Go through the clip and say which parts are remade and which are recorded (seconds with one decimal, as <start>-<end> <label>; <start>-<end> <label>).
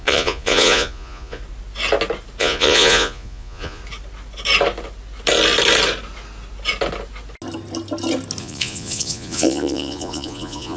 0.0-1.4 remade; 1.4-2.4 recorded; 2.4-3.8 remade; 3.8-8.4 recorded; 8.4-10.8 remade